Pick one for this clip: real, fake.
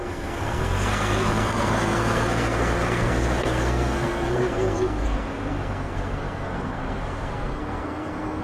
fake